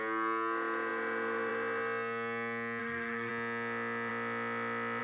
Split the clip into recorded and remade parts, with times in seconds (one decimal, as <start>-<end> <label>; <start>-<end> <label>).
0.0-2.8 recorded; 2.8-3.3 remade; 3.3-5.0 recorded